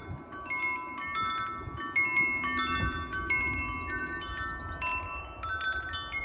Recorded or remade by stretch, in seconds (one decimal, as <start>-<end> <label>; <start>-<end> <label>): 0.0-6.2 recorded